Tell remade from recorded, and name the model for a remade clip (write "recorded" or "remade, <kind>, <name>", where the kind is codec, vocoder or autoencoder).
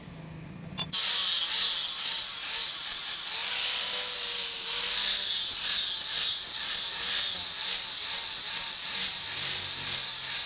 recorded